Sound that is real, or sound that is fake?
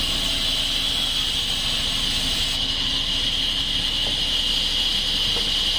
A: real